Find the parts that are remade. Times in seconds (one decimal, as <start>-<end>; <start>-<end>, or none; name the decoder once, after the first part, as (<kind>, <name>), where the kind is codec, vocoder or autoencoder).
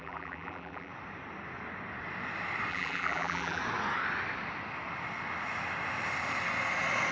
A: 0.0-0.9 (vocoder, BigVGAN v2); 2.7-3.6